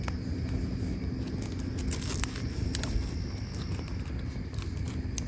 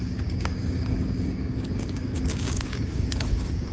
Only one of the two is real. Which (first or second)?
first